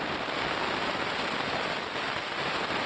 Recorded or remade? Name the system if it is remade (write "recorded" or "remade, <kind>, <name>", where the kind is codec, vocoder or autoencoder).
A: recorded